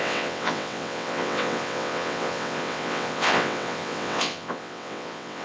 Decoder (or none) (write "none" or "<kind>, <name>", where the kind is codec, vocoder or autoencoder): vocoder, WaveNeXt